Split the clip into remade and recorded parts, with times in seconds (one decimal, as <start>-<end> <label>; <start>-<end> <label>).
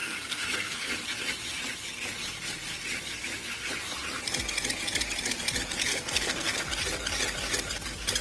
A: 0.0-0.9 remade; 0.9-5.9 recorded; 5.9-6.6 remade; 6.6-8.2 recorded